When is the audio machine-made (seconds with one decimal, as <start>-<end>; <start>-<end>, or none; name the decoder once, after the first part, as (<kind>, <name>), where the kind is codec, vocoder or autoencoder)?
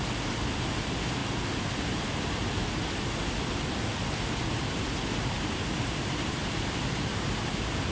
0.0-1.2 (vocoder, BigVGAN v2); 4.7-6.4; 7.5-7.9